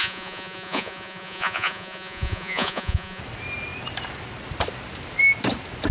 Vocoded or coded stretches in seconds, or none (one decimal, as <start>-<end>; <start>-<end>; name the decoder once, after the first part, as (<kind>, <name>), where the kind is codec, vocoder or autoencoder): 0.0-3.2 (vocoder, Vocos)